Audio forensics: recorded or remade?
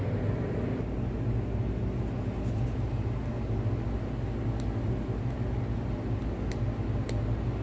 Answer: recorded